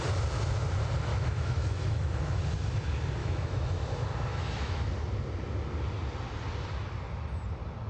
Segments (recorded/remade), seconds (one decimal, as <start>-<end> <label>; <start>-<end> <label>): 0.0-1.1 recorded; 1.1-2.4 remade; 2.4-3.2 recorded; 3.2-3.8 remade; 3.8-4.3 recorded; 4.3-4.9 remade; 4.9-7.9 recorded